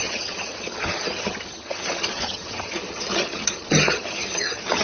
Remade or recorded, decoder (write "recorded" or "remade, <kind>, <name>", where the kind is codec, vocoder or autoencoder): remade, vocoder, HiFi-GAN